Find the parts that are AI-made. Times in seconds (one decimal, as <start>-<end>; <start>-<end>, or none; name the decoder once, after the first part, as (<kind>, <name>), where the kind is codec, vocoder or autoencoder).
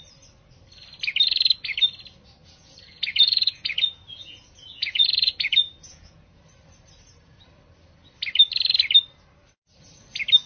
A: 2.4-6.4 (vocoder, Vocos)